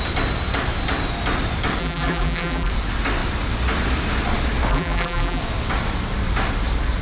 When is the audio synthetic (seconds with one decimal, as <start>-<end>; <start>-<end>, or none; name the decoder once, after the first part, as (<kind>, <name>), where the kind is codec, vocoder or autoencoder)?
1.8-2.7 (vocoder, BigVGAN v2); 4.7-5.4